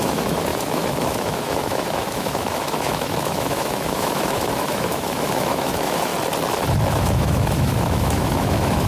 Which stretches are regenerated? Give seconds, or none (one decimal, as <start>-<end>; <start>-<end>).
0.0-6.1; 6.9-8.9